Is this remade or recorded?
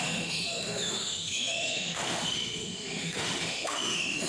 remade